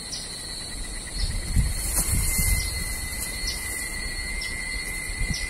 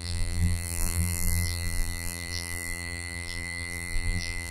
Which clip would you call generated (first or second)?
second